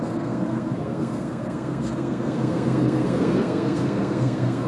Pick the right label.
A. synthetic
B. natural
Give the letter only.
A